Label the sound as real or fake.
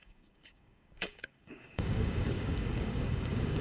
fake